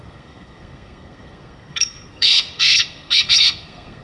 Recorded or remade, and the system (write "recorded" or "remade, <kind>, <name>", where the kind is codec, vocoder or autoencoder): remade, codec, SNAC